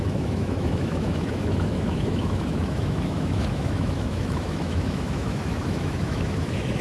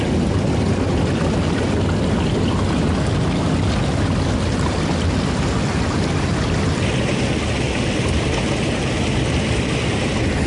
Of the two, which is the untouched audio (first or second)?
second